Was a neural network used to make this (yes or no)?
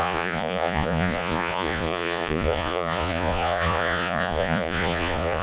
yes